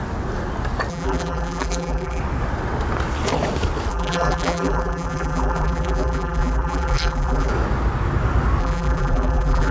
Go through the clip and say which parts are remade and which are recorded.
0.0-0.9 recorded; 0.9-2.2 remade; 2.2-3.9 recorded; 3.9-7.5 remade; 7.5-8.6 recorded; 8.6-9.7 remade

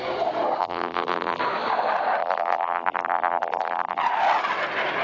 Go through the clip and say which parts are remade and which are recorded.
0.0-0.6 recorded; 0.6-1.4 remade; 1.4-2.2 recorded; 2.2-4.0 remade; 4.0-5.0 recorded

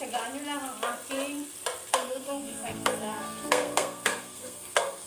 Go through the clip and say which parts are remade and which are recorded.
0.0-1.9 recorded; 1.9-5.1 remade

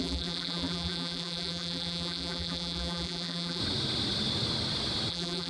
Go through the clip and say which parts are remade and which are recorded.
0.0-3.6 remade; 3.6-5.1 recorded; 5.1-5.5 remade

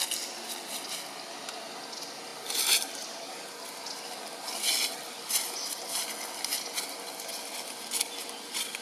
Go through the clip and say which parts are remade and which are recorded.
0.0-8.8 recorded

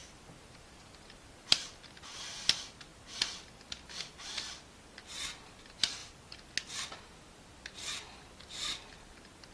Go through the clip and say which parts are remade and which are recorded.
0.0-9.5 recorded